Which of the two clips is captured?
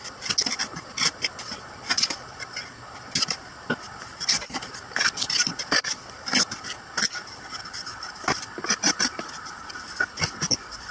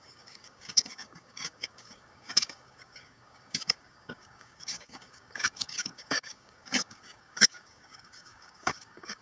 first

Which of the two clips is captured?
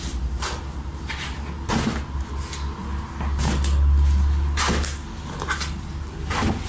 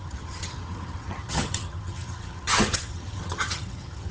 first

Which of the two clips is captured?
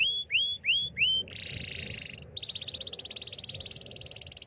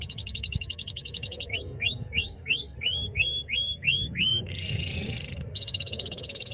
first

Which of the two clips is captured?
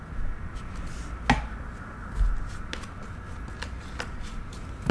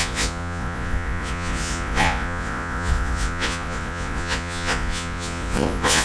first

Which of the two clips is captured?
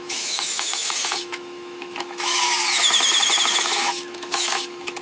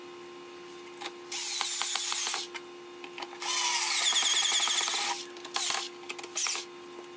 second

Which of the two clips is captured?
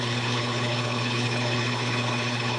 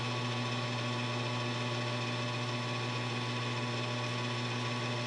second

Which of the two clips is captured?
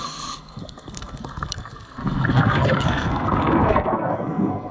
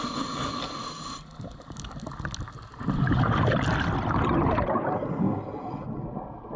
second